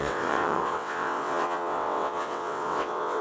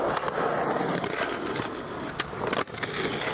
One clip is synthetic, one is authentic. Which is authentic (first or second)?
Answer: second